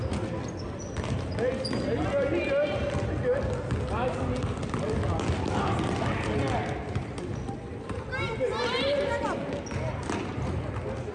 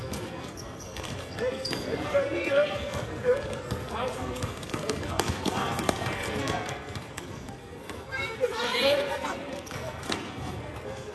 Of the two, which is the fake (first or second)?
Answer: second